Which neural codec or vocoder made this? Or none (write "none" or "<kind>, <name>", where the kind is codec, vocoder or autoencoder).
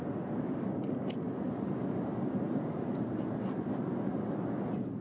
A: none